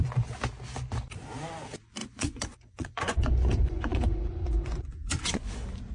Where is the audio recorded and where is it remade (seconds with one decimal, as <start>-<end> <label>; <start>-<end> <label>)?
0.0-2.0 recorded; 2.0-5.5 remade; 5.5-5.9 recorded